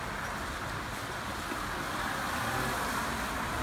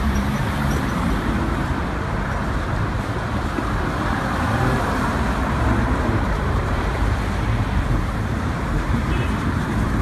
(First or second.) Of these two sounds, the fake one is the second